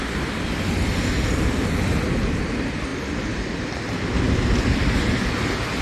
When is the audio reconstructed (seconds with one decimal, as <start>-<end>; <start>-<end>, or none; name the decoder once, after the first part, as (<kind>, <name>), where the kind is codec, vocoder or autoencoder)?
none